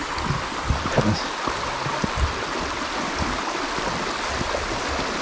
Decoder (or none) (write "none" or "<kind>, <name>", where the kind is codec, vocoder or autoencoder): none